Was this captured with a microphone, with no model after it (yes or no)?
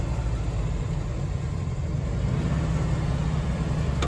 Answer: yes